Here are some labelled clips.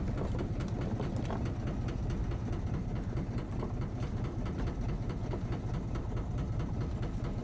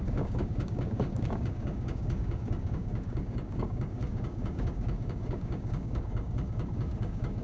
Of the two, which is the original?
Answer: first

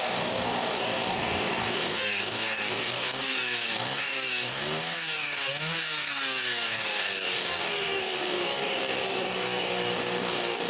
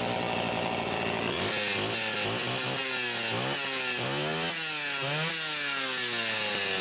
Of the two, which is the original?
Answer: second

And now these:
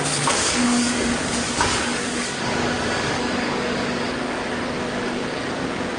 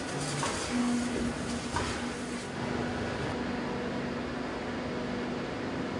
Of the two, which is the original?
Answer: second